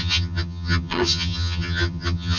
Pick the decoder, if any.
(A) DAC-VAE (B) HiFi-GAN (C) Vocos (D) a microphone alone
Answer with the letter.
B